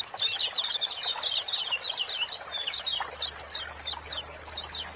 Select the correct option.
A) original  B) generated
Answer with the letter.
A